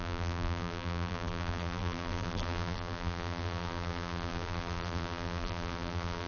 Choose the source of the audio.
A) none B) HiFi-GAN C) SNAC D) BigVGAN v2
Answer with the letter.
D